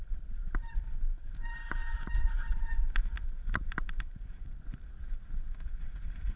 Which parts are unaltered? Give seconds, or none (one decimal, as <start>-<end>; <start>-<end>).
0.0-6.4